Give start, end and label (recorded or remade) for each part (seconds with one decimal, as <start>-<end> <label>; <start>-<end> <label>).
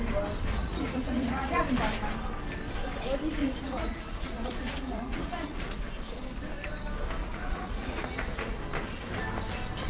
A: 0.0-0.5 recorded; 0.5-1.6 remade; 1.6-3.4 recorded; 3.4-5.8 remade; 5.8-7.2 recorded; 7.2-8.6 remade; 8.6-9.9 recorded